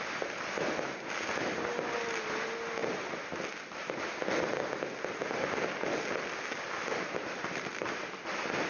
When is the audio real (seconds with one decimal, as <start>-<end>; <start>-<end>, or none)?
0.0-8.7